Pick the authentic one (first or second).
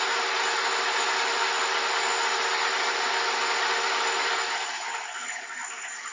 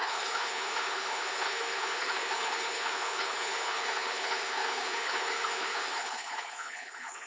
first